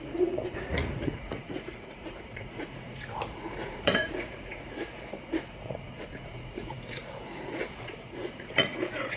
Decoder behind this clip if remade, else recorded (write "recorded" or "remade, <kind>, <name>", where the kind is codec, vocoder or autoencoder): remade, vocoder, Vocos